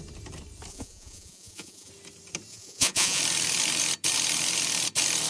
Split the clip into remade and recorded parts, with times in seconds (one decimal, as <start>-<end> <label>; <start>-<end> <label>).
0.0-0.7 recorded; 0.7-1.9 remade; 1.9-2.5 recorded; 2.5-3.2 remade; 3.2-5.3 recorded